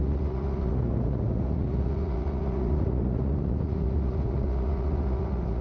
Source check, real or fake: fake